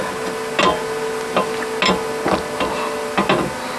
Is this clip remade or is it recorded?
recorded